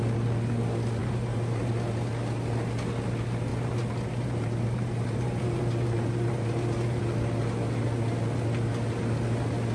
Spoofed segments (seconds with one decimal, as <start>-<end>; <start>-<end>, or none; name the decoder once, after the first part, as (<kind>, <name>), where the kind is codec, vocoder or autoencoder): 1.0-1.7 (vocoder, BigVGAN v2); 3.5-7.0